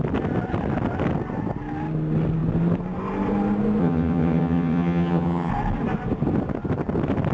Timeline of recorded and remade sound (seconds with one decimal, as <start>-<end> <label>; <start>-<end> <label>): 0.0-3.8 recorded; 3.8-5.5 remade; 5.5-7.3 recorded